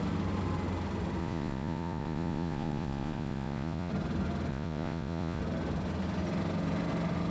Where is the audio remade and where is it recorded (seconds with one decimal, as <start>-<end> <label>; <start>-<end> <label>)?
0.0-1.2 recorded; 1.2-3.9 remade; 3.9-4.5 recorded; 4.5-5.4 remade; 5.4-7.3 recorded